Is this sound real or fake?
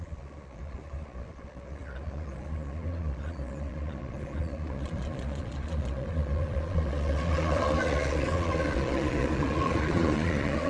fake